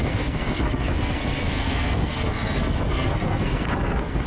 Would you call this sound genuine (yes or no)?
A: no